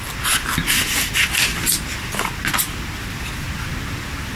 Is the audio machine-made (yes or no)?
no